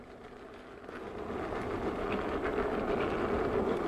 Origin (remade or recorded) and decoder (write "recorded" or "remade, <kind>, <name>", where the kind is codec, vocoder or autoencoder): recorded